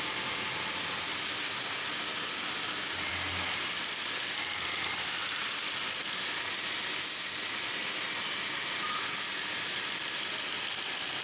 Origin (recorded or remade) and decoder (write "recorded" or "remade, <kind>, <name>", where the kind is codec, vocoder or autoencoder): recorded